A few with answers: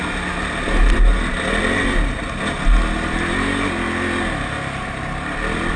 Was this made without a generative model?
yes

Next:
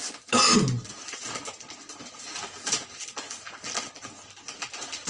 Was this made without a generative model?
yes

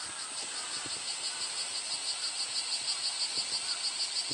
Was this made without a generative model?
yes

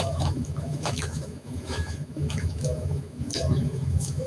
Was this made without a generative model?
no